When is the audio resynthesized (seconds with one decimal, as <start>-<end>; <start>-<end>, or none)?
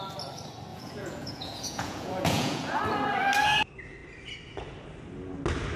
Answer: 0.7-2.8